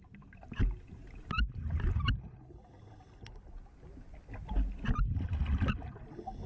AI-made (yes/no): no